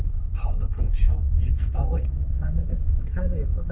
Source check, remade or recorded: remade